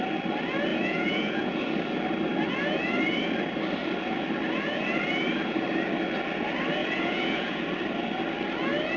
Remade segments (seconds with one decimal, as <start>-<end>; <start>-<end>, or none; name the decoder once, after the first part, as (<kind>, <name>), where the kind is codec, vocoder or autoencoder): 0.7-1.7 (vocoder, Vocos); 6.8-7.6